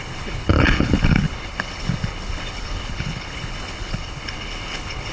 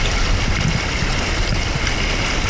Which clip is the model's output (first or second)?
first